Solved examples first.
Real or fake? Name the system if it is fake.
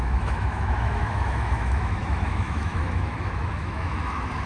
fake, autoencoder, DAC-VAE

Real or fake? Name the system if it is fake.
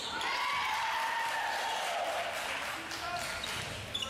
real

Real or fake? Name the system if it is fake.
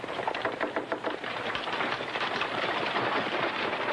real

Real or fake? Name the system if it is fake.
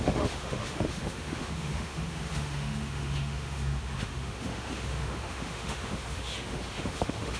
fake, autoencoder, DAC-VAE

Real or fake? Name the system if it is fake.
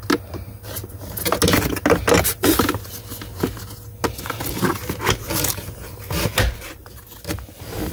real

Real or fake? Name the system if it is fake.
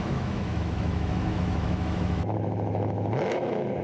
fake, autoencoder, DAC-VAE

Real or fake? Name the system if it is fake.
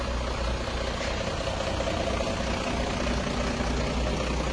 real